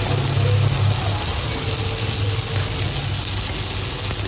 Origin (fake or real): real